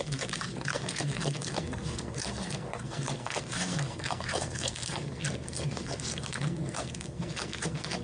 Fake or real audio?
fake